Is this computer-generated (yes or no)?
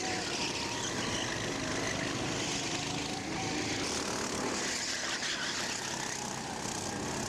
no